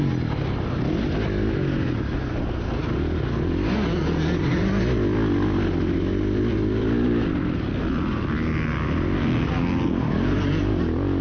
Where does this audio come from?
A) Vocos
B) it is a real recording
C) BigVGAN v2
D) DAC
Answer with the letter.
B